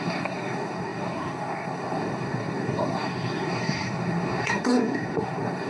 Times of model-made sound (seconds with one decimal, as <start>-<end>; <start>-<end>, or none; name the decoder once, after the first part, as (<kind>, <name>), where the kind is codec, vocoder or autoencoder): 0.0-5.7 (codec, SNAC)